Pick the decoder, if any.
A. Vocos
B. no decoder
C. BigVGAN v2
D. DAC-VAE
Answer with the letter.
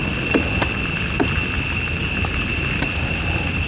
B